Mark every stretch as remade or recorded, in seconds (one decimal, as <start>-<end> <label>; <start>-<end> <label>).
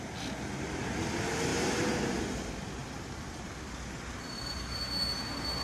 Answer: 0.0-1.5 recorded; 1.5-2.2 remade; 2.2-5.6 recorded